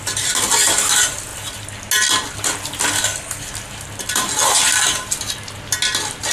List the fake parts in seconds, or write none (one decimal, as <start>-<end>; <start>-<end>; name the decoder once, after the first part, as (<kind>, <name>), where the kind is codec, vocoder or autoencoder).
none